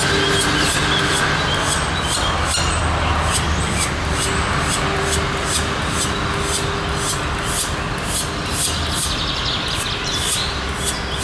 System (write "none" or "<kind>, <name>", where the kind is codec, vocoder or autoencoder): none